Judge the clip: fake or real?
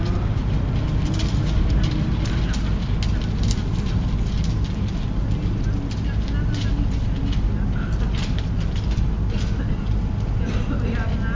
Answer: real